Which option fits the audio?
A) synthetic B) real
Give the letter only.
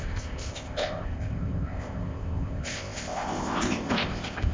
A